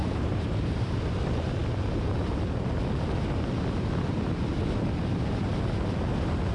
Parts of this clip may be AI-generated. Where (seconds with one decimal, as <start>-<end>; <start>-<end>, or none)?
0.0-1.1